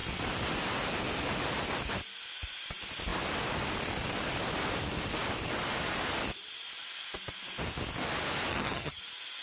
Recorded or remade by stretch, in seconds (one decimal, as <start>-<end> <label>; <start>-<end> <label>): 0.0-8.5 recorded; 8.5-9.0 remade; 9.0-9.4 recorded